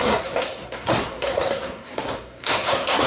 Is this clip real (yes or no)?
no